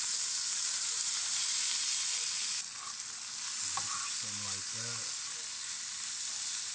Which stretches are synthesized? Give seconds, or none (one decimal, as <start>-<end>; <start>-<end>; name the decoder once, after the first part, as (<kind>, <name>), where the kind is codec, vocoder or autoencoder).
1.4-1.9 (vocoder, BigVGAN v2)